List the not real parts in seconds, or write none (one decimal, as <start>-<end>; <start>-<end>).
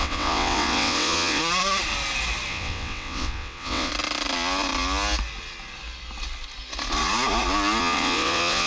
0.0-1.4; 2.5-3.9; 7.8-8.7